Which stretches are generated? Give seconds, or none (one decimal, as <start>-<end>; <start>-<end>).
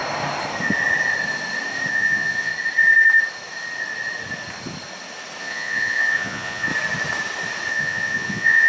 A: 1.9-2.5; 5.4-6.7; 7.7-8.7